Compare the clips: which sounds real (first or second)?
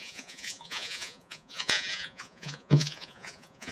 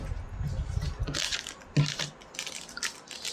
second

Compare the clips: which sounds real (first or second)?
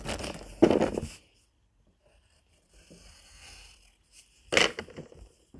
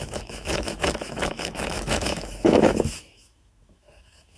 first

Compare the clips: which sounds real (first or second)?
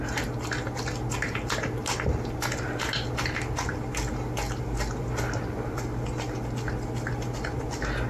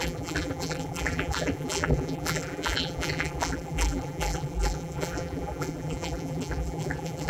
first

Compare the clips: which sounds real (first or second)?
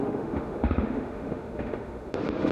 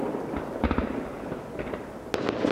second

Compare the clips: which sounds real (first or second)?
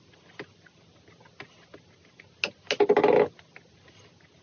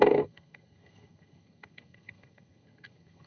first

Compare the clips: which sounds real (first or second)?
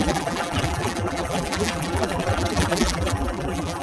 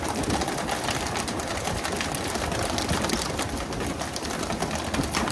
second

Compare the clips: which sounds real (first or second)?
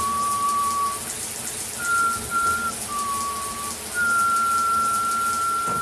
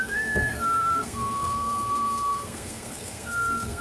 first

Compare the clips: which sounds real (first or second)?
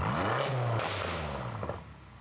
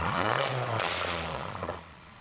first